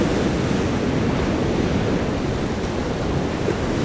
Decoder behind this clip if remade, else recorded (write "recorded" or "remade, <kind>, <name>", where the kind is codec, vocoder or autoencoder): recorded